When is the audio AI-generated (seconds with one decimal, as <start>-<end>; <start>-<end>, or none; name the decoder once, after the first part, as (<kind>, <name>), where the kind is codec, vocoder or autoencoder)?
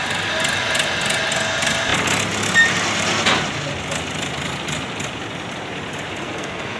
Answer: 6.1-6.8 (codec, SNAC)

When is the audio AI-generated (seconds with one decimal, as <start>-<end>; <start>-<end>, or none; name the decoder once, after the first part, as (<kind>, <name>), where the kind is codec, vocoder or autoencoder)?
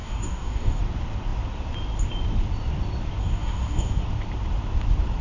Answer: 0.0-0.8 (codec, DAC); 3.2-4.0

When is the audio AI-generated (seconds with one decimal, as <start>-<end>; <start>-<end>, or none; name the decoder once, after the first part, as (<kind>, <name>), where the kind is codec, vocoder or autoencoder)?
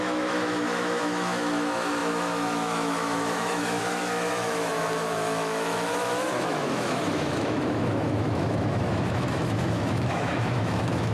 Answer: 0.0-11.1 (autoencoder, DAC-VAE)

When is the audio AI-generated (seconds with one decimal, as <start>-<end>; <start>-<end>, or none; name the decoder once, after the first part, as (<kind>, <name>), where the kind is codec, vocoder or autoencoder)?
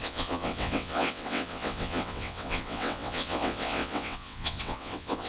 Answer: 0.0-5.3 (vocoder, WaveNeXt)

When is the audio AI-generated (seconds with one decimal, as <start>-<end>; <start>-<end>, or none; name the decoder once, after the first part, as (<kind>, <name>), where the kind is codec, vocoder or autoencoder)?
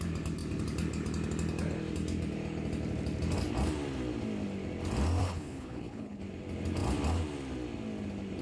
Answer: 5.2-6.2 (codec, HILCodec)